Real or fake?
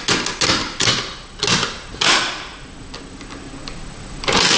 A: real